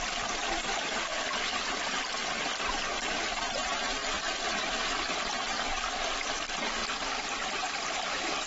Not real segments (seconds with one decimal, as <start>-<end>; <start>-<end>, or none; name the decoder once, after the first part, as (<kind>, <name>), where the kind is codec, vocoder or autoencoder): none

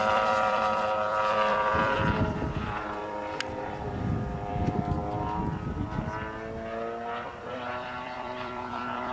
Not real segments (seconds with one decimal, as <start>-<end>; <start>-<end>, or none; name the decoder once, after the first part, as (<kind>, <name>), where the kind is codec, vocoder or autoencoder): 0.0-5.0 (vocoder, BigVGAN v2); 7.5-9.1

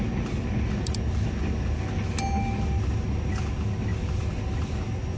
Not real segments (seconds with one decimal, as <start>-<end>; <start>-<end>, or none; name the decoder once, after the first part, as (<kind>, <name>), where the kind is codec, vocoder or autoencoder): 3.9-4.7 (vocoder, BigVGAN v2)

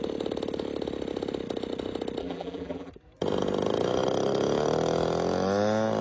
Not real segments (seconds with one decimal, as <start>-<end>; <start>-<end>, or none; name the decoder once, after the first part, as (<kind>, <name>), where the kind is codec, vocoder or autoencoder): 2.2-2.9 (vocoder, BigVGAN v2)

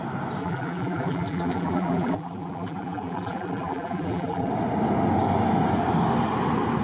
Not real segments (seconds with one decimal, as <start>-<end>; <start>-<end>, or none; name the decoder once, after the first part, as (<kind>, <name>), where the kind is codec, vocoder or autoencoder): 0.4-4.5 (vocoder, BigVGAN v2)